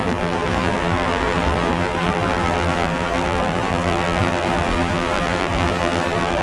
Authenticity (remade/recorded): remade